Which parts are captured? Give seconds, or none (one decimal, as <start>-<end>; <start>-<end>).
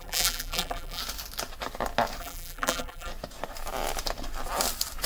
1.0-2.2; 3.1-5.1